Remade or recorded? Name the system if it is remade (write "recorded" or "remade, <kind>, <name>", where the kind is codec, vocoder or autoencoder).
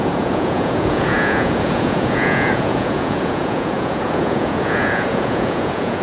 remade, vocoder, Vocos